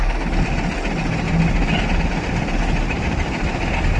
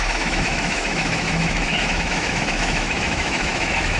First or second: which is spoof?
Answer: second